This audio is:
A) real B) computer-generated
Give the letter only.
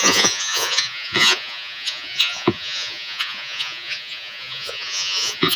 B